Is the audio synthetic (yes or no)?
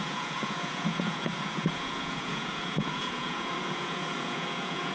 yes